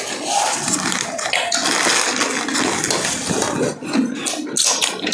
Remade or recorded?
recorded